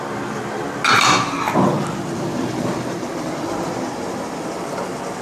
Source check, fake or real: real